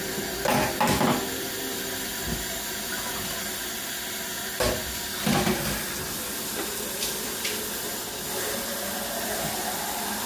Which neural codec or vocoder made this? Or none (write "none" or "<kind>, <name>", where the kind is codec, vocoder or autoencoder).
none